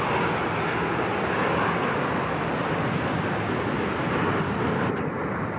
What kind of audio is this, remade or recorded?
recorded